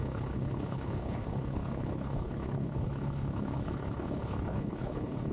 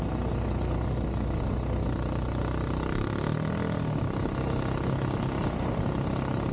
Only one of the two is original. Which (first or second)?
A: second